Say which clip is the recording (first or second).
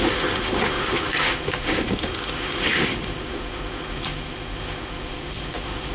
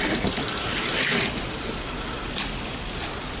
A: second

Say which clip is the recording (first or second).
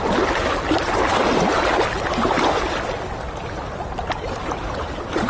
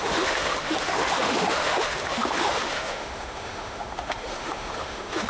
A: first